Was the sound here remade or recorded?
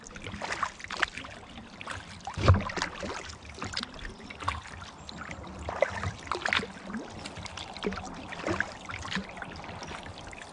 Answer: recorded